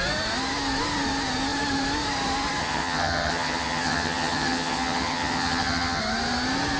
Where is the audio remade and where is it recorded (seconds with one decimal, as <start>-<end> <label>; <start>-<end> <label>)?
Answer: 0.0-2.6 recorded; 2.6-6.0 remade; 6.0-6.8 recorded